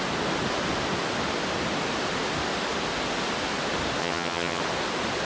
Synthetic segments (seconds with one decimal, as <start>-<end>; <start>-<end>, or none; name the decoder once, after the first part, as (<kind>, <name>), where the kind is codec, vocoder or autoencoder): 4.0-4.6 (vocoder, HiFi-GAN)

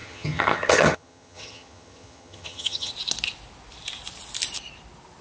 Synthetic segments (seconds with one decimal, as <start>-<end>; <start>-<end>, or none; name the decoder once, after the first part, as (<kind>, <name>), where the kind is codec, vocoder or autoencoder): 0.0-2.9 (vocoder, HiFi-GAN)

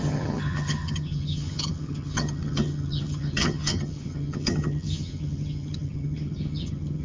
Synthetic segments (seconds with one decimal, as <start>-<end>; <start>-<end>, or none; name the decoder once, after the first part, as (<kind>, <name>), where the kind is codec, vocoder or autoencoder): 0.0-7.0 (vocoder, HiFi-GAN)

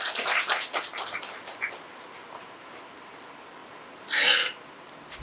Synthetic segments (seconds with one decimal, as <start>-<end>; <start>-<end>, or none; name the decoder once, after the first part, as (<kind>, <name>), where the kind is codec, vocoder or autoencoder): none

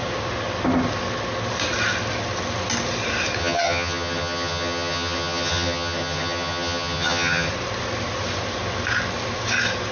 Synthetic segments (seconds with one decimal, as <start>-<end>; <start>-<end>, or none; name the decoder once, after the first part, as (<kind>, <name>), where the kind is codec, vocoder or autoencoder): 3.4-7.5 (vocoder, HiFi-GAN)